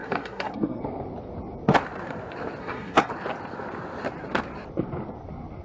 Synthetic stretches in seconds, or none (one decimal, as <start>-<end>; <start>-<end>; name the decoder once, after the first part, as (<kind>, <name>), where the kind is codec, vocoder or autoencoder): 0.0-0.8 (codec, SNAC); 2.6-3.1